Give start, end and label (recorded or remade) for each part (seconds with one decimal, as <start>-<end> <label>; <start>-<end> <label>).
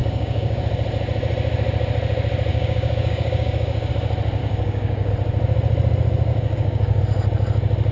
0.0-0.6 remade; 0.6-2.5 recorded; 2.5-3.9 remade; 3.9-4.4 recorded; 4.4-5.1 remade; 5.1-6.3 recorded; 6.3-7.0 remade; 7.0-7.9 recorded